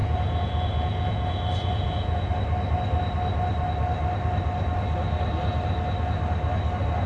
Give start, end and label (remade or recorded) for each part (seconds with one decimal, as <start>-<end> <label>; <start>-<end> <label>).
0.0-2.3 remade; 2.3-7.1 recorded